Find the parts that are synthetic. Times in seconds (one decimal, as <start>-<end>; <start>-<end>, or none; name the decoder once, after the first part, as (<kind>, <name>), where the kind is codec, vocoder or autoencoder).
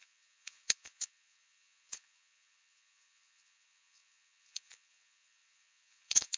0.0-6.4 (vocoder, Vocos)